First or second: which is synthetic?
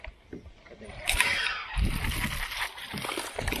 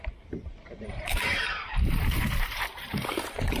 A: second